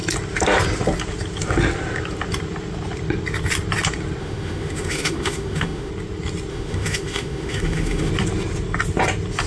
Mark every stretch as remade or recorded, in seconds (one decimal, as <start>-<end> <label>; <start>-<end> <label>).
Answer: 0.0-4.2 recorded; 4.2-5.9 remade; 5.9-6.5 recorded; 6.5-8.1 remade; 8.1-9.5 recorded